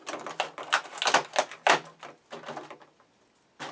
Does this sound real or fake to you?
real